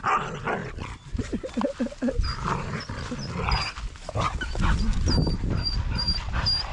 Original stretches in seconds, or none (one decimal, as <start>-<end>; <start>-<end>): 0.0-0.6; 1.5-2.3; 2.8-4.9; 5.6-6.7